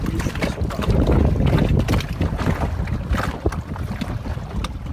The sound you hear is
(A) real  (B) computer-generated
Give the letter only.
A